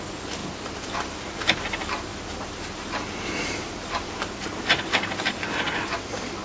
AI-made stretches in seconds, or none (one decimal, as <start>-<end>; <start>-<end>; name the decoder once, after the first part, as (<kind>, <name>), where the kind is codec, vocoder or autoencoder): none